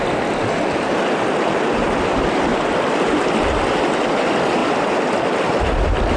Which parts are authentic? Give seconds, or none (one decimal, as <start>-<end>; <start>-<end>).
0.0-6.2